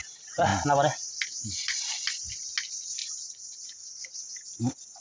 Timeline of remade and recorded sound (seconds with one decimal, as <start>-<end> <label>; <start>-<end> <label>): 0.0-3.0 recorded; 3.0-4.1 remade; 4.1-5.0 recorded